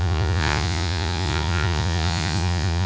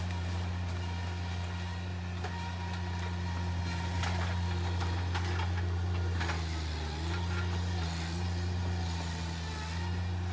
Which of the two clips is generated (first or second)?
first